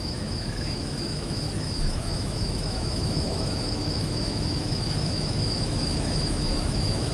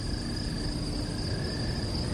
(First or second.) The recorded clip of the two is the second